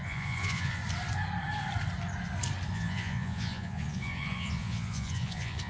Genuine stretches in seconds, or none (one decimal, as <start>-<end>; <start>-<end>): 0.8-2.7